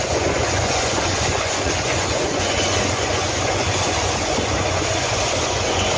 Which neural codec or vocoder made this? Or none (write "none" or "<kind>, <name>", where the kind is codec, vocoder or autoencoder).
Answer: vocoder, Vocos